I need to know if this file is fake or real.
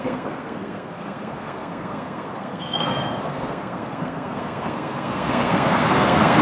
fake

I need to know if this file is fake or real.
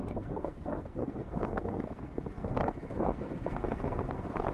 fake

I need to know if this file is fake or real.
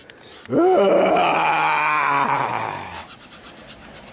real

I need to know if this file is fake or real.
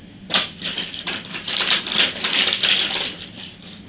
real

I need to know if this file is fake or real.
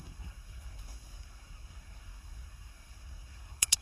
fake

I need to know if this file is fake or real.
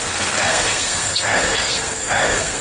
fake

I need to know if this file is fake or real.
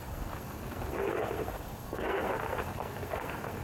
fake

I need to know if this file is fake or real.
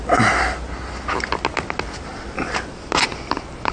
real